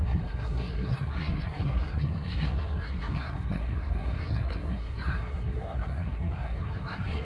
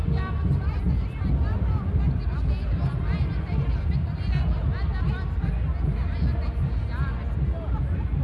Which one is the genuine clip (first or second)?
second